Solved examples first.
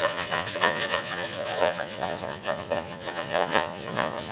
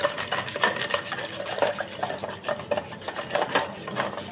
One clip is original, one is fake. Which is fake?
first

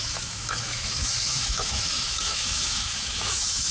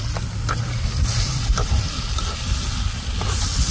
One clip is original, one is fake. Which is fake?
first